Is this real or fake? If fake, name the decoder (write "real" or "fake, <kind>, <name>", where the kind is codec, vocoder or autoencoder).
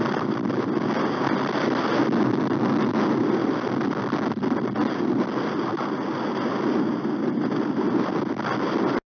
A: real